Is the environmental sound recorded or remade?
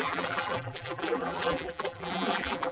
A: remade